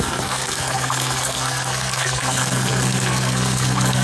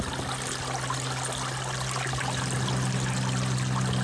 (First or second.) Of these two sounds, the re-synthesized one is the first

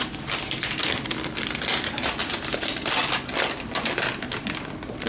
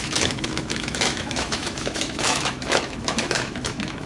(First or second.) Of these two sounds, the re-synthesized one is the second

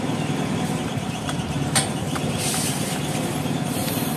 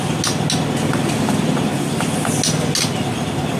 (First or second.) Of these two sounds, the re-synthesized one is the first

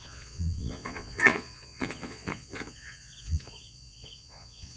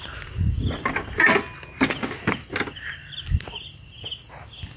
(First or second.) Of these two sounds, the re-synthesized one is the first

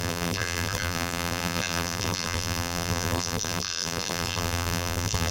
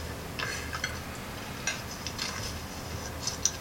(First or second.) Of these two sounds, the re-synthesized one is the first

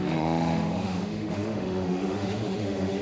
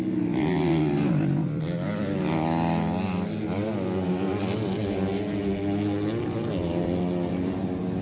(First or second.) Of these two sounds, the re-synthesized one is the first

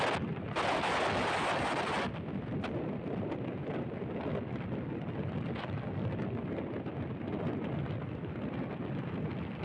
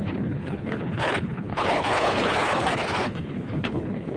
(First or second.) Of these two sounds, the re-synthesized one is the second